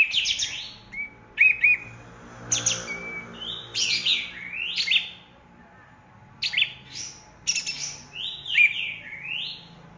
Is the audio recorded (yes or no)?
yes